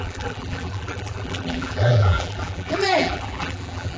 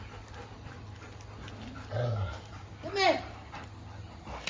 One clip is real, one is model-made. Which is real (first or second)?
second